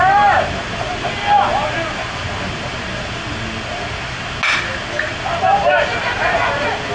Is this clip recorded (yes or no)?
yes